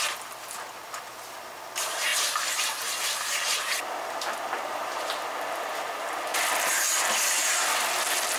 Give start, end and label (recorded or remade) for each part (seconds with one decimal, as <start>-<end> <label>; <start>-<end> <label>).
0.0-6.3 recorded; 6.3-7.0 remade; 7.0-8.4 recorded